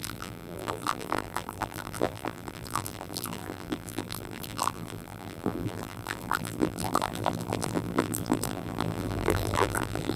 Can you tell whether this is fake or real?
fake